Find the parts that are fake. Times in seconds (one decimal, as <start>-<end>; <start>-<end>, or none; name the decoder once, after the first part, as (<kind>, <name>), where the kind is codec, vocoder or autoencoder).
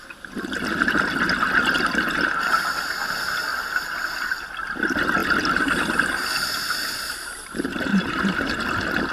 3.5-4.6 (vocoder, BigVGAN v2); 7.9-9.1